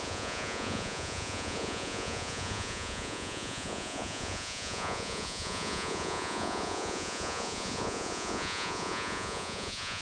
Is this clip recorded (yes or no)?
no